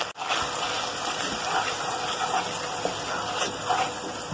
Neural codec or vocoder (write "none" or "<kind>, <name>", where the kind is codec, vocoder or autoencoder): none